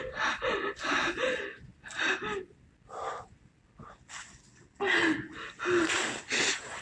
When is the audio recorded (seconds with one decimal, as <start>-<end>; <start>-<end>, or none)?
0.0-6.8